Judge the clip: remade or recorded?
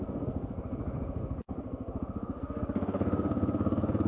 remade